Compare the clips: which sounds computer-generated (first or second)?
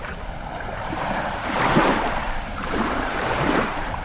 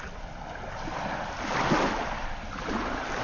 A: first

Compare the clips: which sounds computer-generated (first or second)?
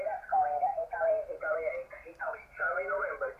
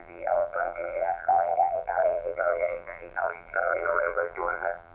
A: second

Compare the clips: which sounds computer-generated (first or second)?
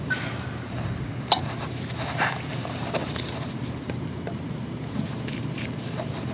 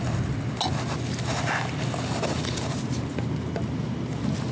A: first